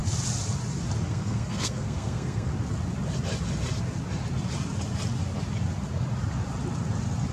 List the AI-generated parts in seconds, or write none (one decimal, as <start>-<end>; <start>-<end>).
1.1-2.5